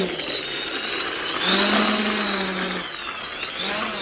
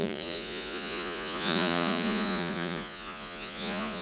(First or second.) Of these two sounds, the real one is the first